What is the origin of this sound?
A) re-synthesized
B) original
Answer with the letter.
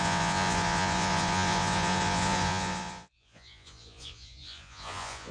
A